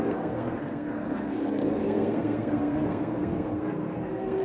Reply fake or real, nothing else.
fake